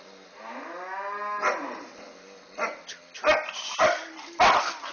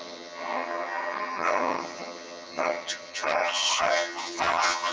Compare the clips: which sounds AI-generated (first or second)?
second